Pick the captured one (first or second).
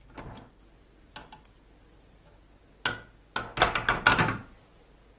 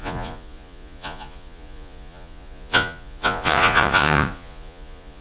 first